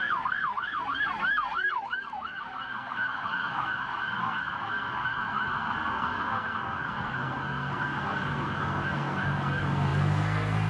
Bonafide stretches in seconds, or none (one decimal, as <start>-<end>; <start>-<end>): none